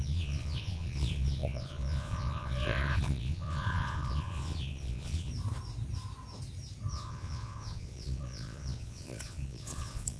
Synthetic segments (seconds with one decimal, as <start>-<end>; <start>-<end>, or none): 0.0-5.3; 6.9-10.2